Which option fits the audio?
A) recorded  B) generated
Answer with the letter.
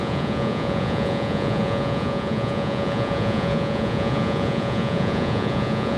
B